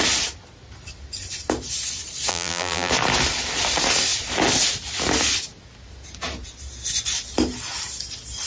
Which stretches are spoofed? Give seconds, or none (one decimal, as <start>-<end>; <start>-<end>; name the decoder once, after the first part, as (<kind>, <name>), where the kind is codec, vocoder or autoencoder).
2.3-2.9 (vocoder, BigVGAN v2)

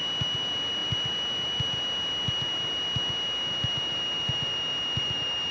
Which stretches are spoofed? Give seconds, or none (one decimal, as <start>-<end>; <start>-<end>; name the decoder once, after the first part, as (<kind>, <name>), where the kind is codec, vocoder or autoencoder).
none

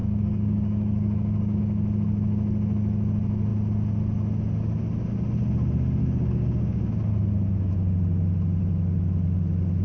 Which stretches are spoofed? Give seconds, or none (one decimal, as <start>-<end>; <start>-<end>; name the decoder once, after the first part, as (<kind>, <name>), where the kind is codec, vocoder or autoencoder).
0.0-1.6 (codec, DAC); 6.0-6.9

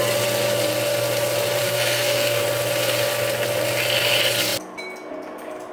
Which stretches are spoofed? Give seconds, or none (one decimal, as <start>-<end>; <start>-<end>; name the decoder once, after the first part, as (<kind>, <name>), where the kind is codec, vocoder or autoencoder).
1.6-2.4 (codec, SNAC)

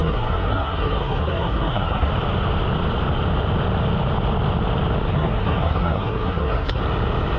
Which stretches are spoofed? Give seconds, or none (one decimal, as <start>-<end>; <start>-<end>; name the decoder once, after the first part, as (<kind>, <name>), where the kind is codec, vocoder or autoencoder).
0.0-2.1 (codec, SNAC); 5.1-6.8

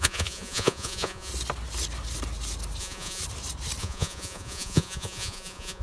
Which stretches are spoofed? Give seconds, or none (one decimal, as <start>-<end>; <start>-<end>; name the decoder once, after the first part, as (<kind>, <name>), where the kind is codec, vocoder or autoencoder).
0.0-1.3 (vocoder, Vocos); 2.8-3.2; 3.8-5.8

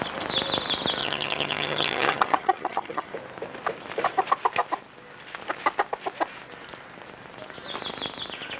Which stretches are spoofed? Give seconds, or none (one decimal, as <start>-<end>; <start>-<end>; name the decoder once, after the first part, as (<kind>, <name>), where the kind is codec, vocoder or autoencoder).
1.0-3.1 (vocoder, HiFi-GAN)

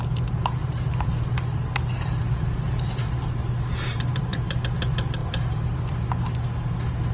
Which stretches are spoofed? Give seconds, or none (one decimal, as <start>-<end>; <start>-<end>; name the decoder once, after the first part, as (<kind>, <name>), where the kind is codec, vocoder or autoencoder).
0.6-4.6 (vocoder, BigVGAN v2); 5.2-5.9